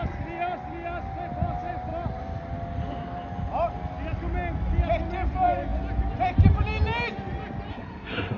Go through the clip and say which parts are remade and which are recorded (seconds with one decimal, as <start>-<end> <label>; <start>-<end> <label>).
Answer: 0.0-7.7 recorded; 7.7-8.4 remade